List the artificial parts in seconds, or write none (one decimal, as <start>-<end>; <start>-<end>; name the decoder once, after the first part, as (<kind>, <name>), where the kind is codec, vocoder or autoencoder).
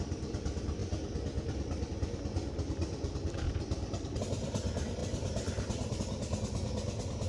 2.8-4.3 (vocoder, BigVGAN v2); 5.0-6.0